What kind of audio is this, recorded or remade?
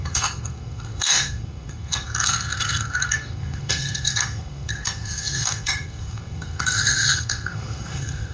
remade